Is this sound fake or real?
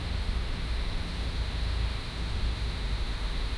fake